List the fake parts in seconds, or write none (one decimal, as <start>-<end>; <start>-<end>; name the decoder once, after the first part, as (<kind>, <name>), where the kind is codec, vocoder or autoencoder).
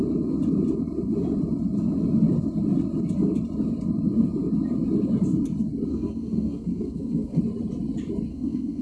5.9-7.4 (codec, SNAC); 8.3-8.8